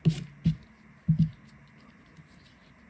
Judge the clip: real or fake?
real